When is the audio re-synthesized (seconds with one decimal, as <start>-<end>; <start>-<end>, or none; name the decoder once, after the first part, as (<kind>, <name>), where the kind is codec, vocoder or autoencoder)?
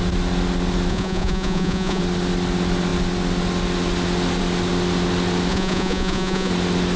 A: 0.9-2.0 (vocoder, Vocos); 5.5-6.5